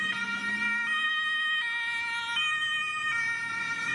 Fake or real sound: real